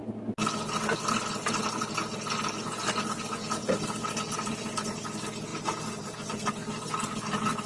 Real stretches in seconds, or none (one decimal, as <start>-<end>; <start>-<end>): 0.0-3.6; 4.3-5.5; 6.5-7.7